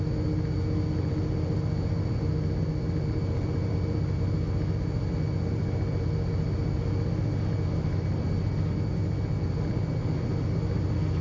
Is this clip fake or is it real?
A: real